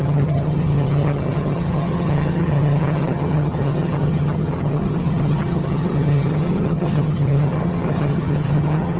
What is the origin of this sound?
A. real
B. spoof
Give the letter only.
B